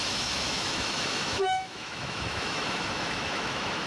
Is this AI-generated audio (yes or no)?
yes